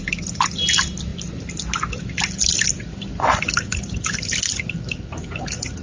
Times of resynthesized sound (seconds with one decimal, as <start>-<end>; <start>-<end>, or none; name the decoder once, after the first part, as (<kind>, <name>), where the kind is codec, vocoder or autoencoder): none